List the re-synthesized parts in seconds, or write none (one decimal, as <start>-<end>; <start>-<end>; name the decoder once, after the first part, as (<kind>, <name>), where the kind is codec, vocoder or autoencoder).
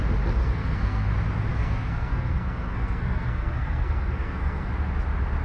0.4-1.1 (codec, SNAC); 1.5-4.7